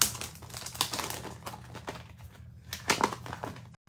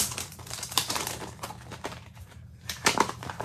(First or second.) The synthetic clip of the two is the second